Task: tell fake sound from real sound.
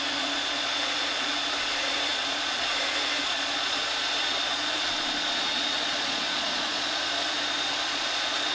fake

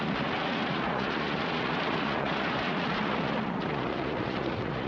fake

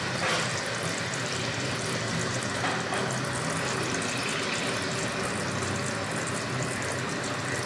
real